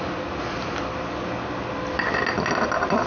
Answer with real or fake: real